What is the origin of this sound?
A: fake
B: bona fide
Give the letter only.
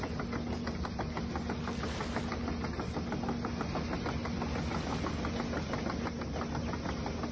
B